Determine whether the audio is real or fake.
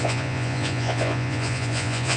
fake